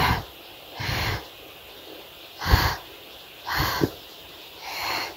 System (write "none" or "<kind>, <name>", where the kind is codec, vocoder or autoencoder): none